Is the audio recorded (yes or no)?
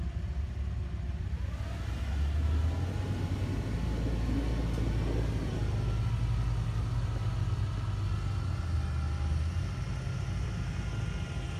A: yes